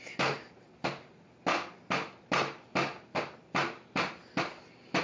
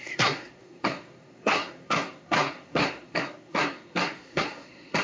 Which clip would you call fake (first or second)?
second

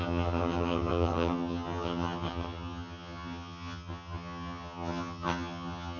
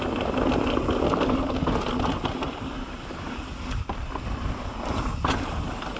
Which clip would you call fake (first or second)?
first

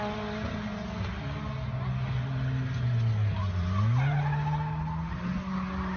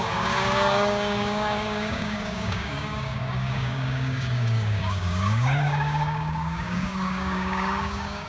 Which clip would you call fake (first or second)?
second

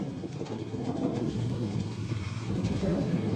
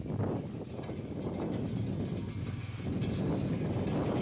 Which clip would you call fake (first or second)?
first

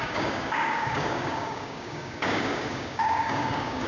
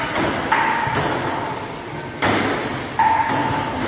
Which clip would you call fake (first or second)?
first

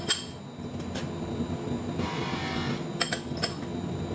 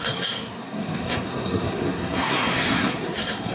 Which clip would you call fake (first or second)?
second